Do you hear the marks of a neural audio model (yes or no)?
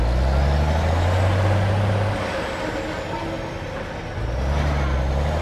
no